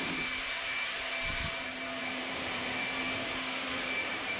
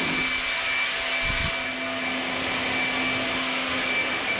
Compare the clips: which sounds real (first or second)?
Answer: second